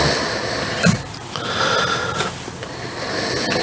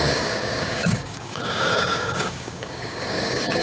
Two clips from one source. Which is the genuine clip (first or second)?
first